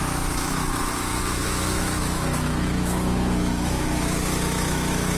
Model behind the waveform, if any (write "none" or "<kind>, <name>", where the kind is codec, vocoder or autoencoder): autoencoder, DAC-VAE